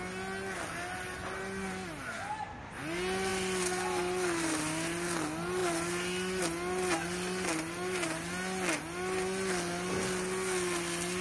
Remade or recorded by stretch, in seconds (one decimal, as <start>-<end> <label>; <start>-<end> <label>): 0.0-11.2 recorded